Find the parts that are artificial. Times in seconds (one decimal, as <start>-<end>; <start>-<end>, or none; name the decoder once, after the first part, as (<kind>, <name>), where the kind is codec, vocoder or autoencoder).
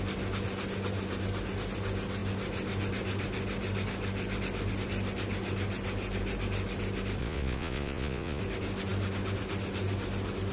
7.2-8.4 (vocoder, Vocos)